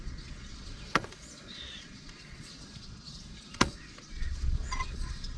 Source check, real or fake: fake